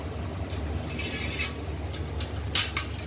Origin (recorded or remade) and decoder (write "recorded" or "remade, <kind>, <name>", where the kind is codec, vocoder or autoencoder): recorded